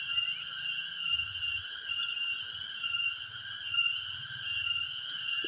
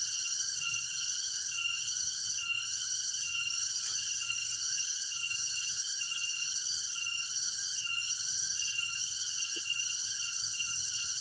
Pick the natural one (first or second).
first